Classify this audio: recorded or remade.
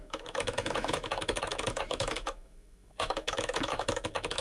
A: remade